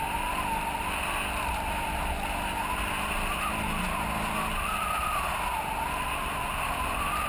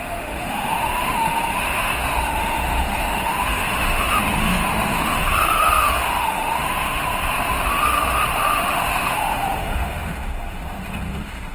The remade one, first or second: second